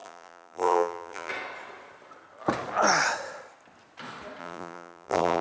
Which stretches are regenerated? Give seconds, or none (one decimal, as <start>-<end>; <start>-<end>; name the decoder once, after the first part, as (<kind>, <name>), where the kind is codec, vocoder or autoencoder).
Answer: 0.0-1.3 (vocoder, BigVGAN v2); 4.4-5.4